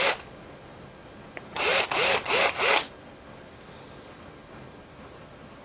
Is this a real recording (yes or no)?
yes